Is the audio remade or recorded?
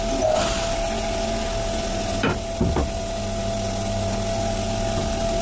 recorded